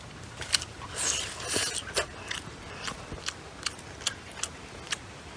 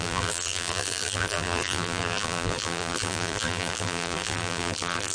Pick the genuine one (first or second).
first